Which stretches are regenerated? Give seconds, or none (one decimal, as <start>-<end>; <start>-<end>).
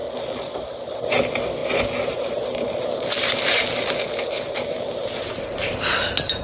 none